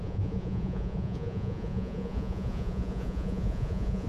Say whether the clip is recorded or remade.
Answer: remade